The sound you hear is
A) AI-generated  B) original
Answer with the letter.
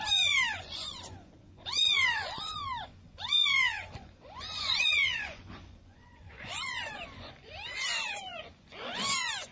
A